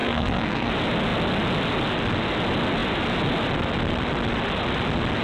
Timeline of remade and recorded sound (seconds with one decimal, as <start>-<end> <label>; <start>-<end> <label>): 0.0-0.7 remade; 0.7-5.2 recorded